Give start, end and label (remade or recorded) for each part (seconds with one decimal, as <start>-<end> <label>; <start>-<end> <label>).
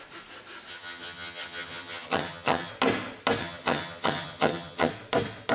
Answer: 0.0-0.7 recorded; 0.7-2.7 remade; 2.7-3.4 recorded; 3.4-4.9 remade; 4.9-5.5 recorded